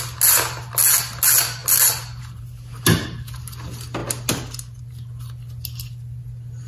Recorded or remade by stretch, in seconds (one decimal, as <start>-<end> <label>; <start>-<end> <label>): 0.0-6.7 recorded